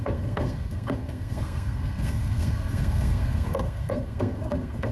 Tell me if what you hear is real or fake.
fake